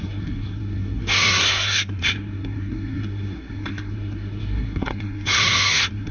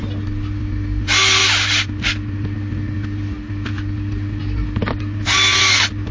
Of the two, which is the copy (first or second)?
first